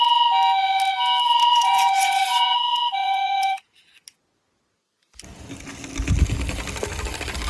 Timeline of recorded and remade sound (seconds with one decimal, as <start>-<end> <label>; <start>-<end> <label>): 0.0-1.4 recorded; 1.4-3.6 remade; 3.6-7.5 recorded